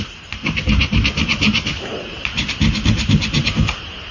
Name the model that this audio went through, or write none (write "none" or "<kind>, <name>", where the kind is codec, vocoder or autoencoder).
vocoder, BigVGAN v2